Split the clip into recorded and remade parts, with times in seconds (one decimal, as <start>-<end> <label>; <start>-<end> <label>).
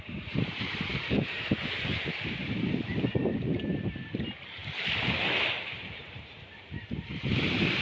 0.0-4.6 remade; 4.6-5.8 recorded; 5.8-7.8 remade